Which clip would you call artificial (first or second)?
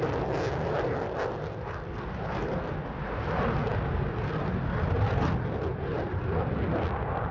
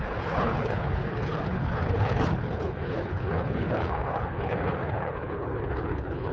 second